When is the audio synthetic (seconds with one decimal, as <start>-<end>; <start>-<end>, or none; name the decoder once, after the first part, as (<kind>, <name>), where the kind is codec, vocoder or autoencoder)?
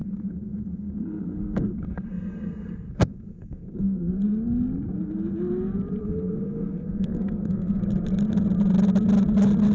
0.0-4.0 (codec, SNAC); 6.0-7.8